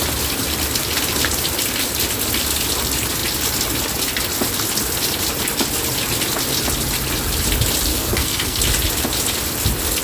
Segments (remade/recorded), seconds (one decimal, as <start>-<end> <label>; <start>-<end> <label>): 0.0-7.9 recorded; 7.9-8.6 remade; 8.6-10.0 recorded